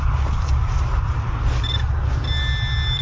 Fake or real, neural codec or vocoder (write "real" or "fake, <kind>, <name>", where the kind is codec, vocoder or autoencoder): real